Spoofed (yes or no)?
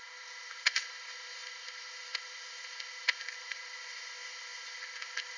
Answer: yes